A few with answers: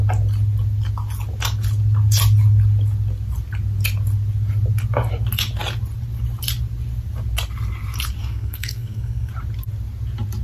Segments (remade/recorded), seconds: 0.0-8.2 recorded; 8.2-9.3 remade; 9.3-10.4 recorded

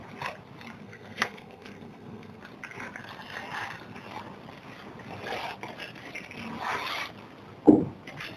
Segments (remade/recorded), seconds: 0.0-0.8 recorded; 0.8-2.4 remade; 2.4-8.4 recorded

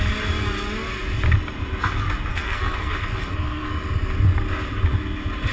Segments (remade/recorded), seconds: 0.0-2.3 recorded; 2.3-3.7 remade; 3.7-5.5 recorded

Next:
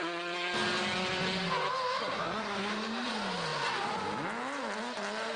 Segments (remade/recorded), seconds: 0.0-2.0 recorded; 2.0-2.7 remade; 2.7-5.4 recorded

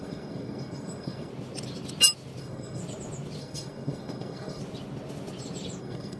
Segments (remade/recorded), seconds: 0.0-1.3 remade; 1.3-2.4 recorded; 2.4-2.8 remade; 2.8-3.4 recorded; 3.4-4.6 remade; 4.6-5.8 recorded; 5.8-6.2 remade

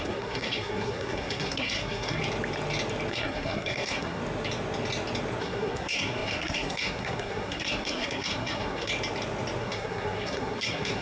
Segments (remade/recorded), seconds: 0.0-2.2 remade; 2.2-3.1 recorded; 3.1-4.2 remade; 4.2-5.4 recorded; 5.4-8.9 remade; 8.9-9.6 recorded; 9.6-11.0 remade

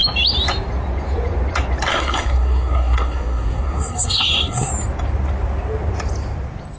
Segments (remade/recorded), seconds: 0.0-1.9 recorded; 1.9-4.7 remade; 4.7-6.8 recorded